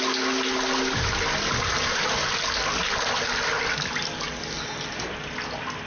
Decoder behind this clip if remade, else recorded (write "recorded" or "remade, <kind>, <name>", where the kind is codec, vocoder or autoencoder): recorded